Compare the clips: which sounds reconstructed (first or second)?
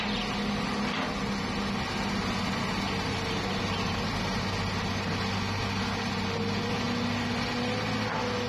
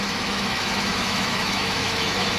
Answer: second